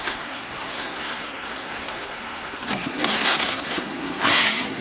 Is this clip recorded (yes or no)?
no